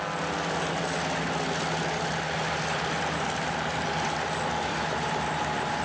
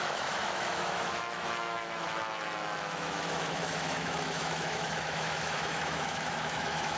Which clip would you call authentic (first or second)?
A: first